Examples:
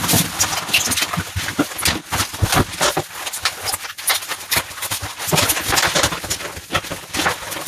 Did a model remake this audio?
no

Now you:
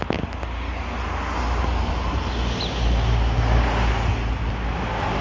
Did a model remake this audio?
no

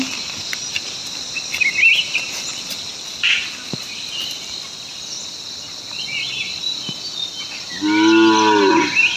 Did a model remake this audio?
no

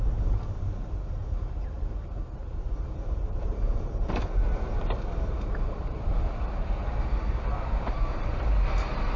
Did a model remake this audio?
yes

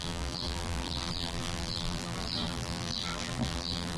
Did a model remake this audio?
yes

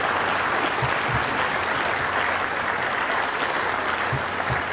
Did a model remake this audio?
no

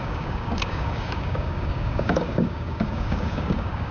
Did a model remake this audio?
yes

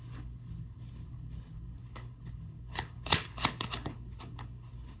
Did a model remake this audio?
yes